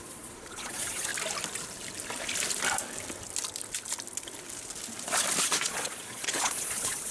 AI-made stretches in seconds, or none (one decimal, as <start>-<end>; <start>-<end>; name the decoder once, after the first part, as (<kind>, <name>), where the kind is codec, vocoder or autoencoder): 0.0-1.1 (vocoder, Vocos); 5.4-7.1